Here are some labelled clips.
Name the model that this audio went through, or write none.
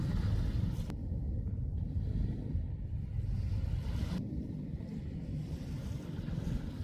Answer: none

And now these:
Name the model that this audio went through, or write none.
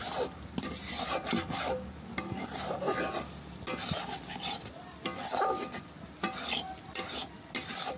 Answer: none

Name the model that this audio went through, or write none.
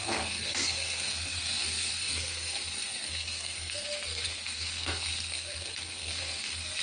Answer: codec, SNAC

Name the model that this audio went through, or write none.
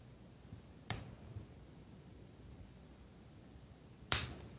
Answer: vocoder, BigVGAN v2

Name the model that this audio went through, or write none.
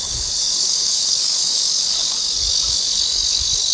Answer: codec, DAC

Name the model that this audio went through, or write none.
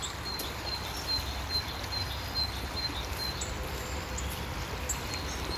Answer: none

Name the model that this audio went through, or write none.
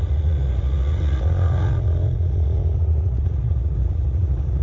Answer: vocoder, Vocos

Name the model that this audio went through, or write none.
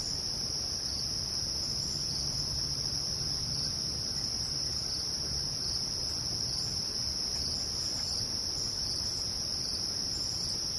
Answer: none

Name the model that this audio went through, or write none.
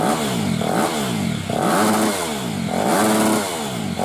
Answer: none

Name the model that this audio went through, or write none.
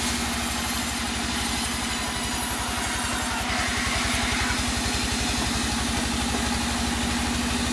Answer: none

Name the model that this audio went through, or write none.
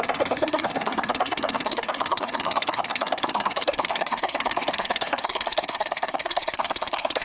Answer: codec, SNAC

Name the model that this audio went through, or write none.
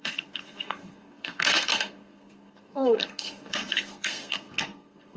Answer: codec, SNAC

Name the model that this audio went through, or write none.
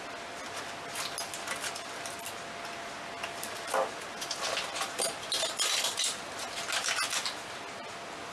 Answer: none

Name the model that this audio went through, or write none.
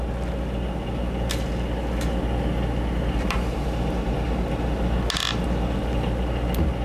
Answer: none